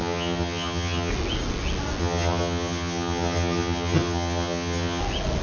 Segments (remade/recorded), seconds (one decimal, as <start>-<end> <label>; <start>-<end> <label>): 0.0-1.1 remade; 1.1-2.0 recorded; 2.0-5.0 remade; 5.0-5.4 recorded